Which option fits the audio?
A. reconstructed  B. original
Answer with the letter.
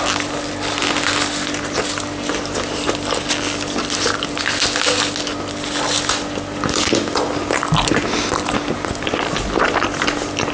B